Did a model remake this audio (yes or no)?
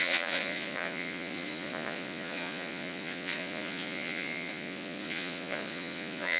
yes